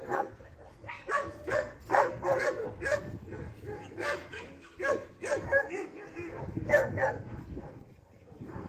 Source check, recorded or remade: remade